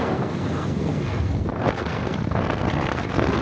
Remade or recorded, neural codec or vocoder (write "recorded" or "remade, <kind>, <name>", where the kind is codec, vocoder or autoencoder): remade, codec, SNAC